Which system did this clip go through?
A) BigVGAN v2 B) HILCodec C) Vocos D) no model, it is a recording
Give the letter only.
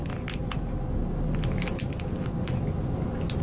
D